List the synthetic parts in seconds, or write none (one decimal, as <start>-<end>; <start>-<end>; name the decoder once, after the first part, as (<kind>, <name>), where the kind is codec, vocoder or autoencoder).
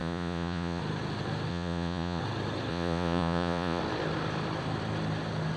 0.0-0.8 (vocoder, Vocos); 1.5-2.2; 2.7-3.8